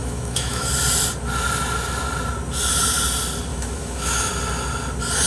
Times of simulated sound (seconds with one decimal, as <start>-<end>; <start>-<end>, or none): 0.0-0.7; 3.5-4.3